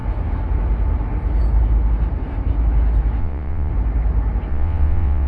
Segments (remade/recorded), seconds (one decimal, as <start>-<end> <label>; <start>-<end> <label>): 0.0-3.2 recorded; 3.2-3.7 remade; 3.7-4.5 recorded; 4.5-5.3 remade